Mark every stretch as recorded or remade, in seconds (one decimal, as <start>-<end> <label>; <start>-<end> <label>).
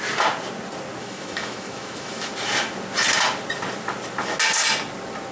0.0-1.0 recorded; 1.0-2.3 remade; 2.3-5.3 recorded